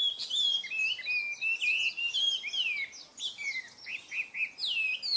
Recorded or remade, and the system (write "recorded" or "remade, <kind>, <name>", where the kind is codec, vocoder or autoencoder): recorded